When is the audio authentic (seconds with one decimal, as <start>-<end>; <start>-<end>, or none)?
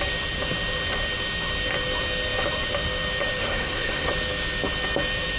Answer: 0.0-3.4; 4.1-5.4